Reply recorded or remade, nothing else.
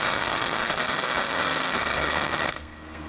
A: remade